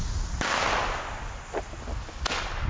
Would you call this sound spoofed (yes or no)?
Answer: no